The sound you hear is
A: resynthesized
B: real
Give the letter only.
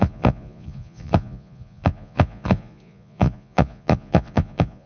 A